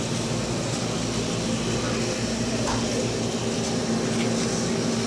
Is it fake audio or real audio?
real